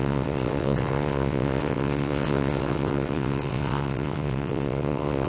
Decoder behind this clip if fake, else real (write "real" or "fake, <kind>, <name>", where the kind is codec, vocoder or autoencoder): fake, vocoder, WaveNeXt